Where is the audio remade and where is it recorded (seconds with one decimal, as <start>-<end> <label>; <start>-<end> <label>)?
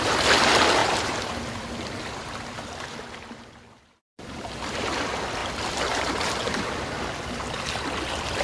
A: 0.0-0.8 recorded; 0.8-1.3 remade; 1.3-5.4 recorded; 5.4-6.7 remade; 6.7-8.4 recorded